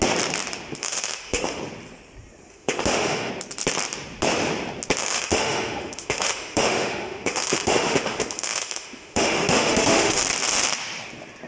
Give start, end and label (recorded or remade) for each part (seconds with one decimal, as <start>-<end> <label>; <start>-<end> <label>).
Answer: 0.0-0.8 recorded; 0.8-1.6 remade; 1.6-2.5 recorded; 2.5-3.3 remade; 3.3-5.0 recorded; 5.0-10.2 remade; 10.2-11.5 recorded